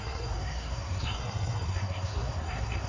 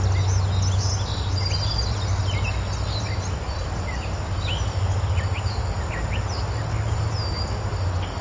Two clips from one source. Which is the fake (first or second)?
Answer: first